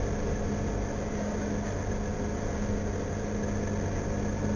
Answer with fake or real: real